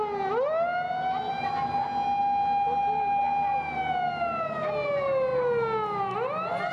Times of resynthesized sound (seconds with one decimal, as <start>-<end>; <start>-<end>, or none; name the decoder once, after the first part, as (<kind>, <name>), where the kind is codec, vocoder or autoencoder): none